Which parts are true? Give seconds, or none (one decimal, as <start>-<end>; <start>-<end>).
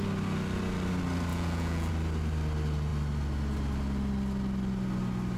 0.0-1.3; 1.9-5.4